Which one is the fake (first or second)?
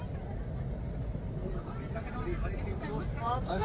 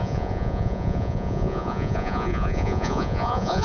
second